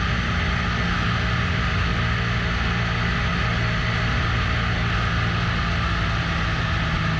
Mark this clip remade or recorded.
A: recorded